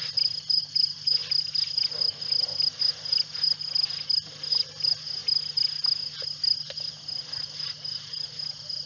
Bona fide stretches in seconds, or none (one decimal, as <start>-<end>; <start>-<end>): 0.0-8.9